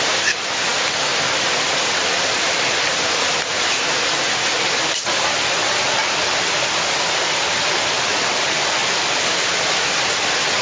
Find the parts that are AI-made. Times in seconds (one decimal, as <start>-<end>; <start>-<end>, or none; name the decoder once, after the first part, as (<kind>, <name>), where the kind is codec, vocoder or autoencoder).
none